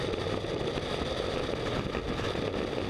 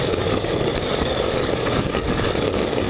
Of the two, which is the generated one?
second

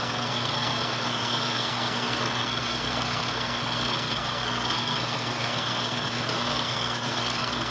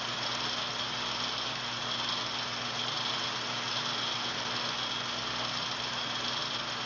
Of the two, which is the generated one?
first